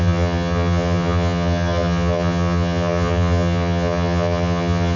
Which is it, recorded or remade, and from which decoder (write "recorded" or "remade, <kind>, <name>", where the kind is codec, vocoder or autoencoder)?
remade, vocoder, HiFi-GAN